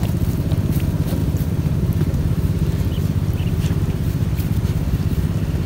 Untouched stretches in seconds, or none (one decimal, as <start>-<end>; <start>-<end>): 0.0-1.2; 4.1-5.7